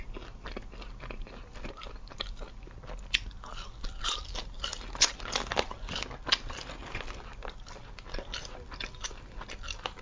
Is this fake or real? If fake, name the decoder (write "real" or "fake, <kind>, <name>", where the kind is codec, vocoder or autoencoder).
real